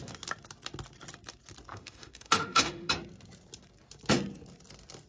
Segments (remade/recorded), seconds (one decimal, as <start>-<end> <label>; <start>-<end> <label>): 0.0-1.7 recorded; 1.7-2.9 remade; 2.9-5.1 recorded